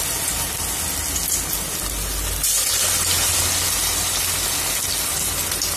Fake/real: real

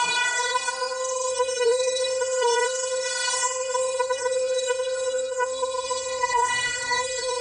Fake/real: fake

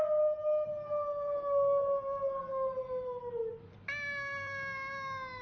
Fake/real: real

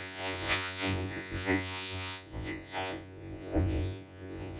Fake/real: fake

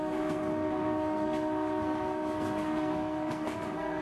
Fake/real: fake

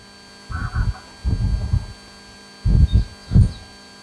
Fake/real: real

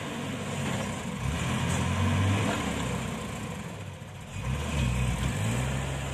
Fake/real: real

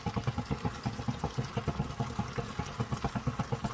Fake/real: real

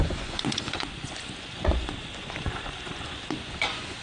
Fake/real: fake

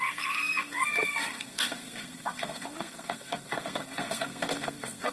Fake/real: fake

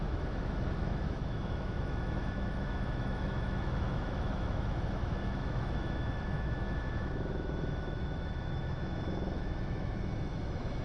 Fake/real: fake